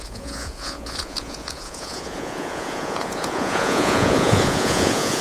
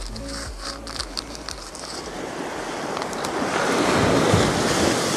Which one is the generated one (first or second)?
first